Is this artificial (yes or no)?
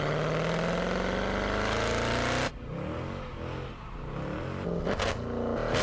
no